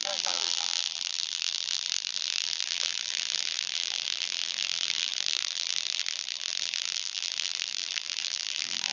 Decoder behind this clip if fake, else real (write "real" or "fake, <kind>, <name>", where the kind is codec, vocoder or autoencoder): fake, vocoder, BigVGAN v2